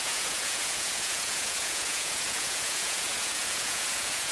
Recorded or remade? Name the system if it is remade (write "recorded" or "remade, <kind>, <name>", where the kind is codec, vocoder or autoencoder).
remade, vocoder, Vocos